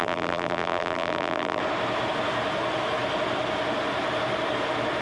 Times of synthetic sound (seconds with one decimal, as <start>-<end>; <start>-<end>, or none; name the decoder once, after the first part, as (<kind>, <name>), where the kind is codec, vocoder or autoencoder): 0.0-1.6 (vocoder, BigVGAN v2)